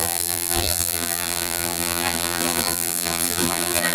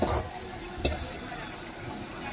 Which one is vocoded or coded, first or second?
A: first